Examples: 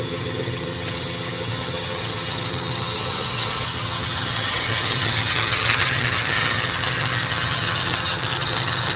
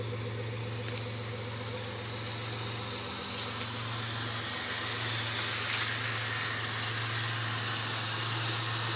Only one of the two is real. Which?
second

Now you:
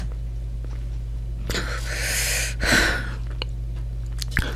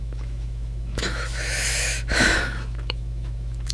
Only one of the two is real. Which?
first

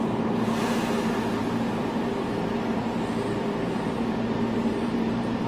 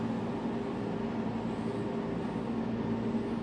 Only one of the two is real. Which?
second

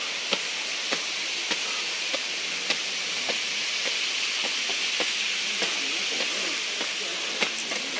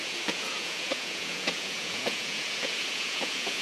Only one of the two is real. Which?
first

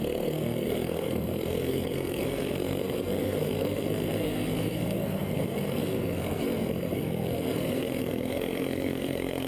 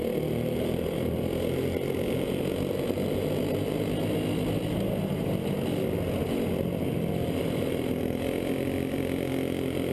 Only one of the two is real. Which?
second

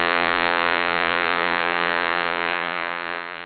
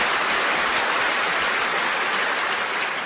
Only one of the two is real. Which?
second